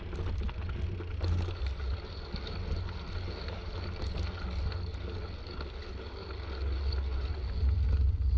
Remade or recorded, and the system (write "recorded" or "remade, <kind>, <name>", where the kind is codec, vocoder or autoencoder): recorded